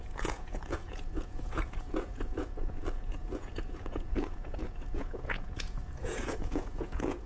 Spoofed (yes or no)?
yes